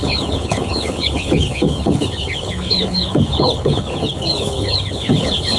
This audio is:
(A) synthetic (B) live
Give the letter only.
A